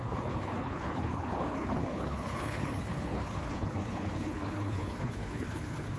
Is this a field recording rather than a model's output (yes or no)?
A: no